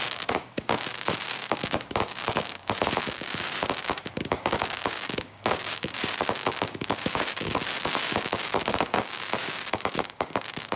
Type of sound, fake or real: fake